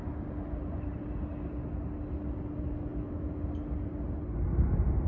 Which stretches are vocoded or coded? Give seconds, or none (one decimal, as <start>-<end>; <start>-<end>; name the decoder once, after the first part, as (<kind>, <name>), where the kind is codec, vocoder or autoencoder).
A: 2.9-3.4 (autoencoder, DAC-VAE)